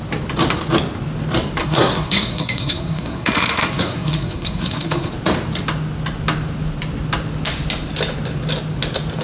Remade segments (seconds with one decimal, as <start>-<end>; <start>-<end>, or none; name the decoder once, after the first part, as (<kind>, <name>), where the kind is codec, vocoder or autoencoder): 1.6-5.1 (codec, SNAC)